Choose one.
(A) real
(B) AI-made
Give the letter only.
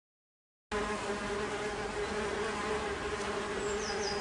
A